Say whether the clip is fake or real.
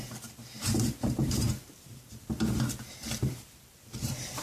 fake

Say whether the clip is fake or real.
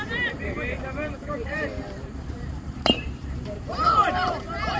fake